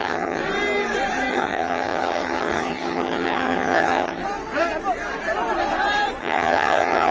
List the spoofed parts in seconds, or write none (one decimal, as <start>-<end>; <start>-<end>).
0.0-0.4; 1.3-4.2; 6.2-7.1